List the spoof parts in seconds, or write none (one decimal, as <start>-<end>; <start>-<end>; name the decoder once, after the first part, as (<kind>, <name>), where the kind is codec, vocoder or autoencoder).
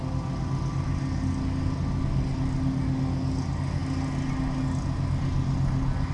none